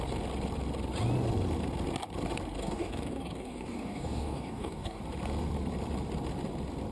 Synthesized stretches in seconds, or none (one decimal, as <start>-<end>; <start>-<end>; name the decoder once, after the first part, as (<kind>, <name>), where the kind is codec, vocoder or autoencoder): 2.6-5.0 (codec, DAC)